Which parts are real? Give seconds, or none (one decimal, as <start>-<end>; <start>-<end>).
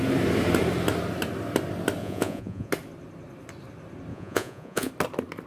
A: 0.0-2.0; 2.7-4.1; 4.9-5.5